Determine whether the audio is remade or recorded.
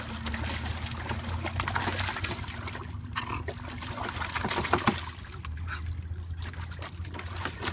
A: recorded